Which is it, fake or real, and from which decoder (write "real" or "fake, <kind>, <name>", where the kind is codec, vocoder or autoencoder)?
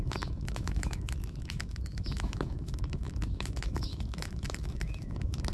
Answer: fake, autoencoder, DAC-VAE